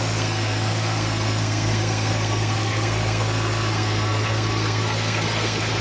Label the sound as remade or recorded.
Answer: remade